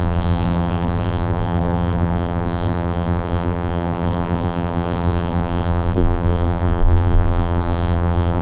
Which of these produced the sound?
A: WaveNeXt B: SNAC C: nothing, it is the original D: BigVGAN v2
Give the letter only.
D